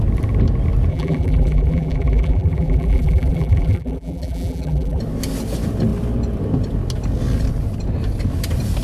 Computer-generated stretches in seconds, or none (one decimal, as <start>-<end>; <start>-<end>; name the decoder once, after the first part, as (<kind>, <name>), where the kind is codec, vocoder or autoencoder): 0.9-5.0 (vocoder, BigVGAN v2)